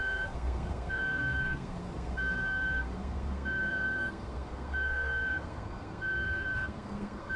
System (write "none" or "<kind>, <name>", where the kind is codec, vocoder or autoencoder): codec, SNAC